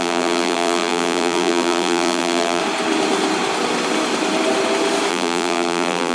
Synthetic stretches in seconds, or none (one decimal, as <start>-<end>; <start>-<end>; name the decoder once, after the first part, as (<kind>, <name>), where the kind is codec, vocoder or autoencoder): 0.0-2.6 (vocoder, BigVGAN v2); 5.1-6.1